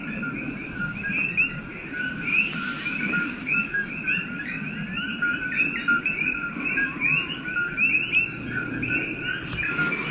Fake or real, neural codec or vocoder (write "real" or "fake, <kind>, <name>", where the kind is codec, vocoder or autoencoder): real